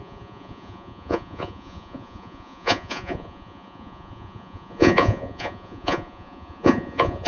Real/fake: fake